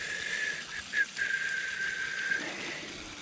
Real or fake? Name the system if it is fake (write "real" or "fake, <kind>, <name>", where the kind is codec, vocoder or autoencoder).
real